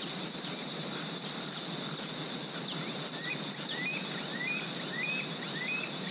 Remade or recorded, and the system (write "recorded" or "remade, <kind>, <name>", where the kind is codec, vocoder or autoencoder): recorded